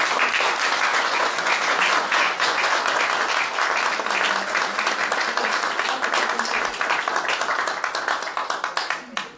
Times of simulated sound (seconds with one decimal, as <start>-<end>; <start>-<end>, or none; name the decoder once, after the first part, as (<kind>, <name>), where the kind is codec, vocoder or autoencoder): 0.9-2.8 (vocoder, Vocos)